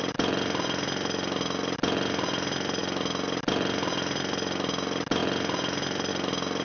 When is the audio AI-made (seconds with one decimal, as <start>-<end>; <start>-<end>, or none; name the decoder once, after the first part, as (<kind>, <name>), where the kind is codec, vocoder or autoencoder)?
none

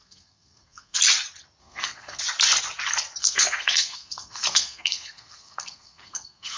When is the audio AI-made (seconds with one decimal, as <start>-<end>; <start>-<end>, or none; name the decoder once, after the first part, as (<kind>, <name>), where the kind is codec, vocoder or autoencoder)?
0.0-1.0 (codec, SNAC); 1.6-2.2; 3.2-6.6

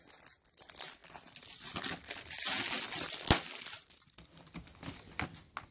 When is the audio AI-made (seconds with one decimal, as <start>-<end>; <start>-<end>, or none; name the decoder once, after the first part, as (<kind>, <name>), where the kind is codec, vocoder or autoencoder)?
none

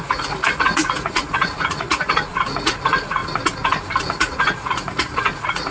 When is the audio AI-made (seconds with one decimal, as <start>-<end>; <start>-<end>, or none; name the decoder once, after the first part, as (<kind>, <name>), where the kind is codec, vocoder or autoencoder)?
0.0-3.2 (vocoder, Vocos); 4.0-5.7

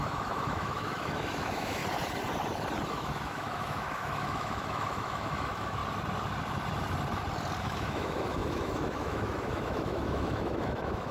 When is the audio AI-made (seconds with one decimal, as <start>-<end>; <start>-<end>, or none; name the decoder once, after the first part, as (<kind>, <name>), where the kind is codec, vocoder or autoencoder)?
0.0-1.8 (autoencoder, DAC-VAE); 2.9-5.8; 7.6-11.1